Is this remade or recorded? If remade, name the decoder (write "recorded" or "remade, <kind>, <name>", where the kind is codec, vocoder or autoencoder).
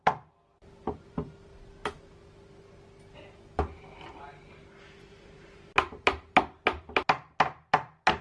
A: recorded